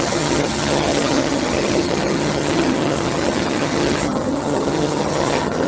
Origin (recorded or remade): remade